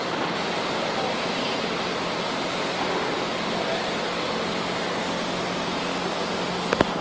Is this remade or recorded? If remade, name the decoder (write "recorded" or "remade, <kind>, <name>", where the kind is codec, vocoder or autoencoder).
recorded